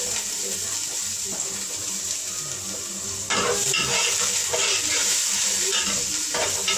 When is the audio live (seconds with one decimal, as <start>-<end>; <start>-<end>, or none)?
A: 0.0-5.0